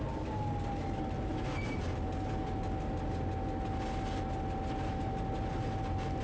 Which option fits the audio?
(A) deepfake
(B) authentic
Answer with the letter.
B